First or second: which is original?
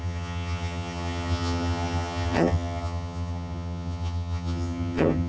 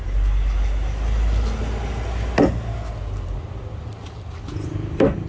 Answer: second